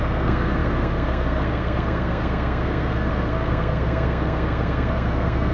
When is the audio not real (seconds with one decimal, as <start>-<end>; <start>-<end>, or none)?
0.0-5.5